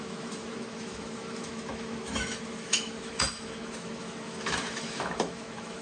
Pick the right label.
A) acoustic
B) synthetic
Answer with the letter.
B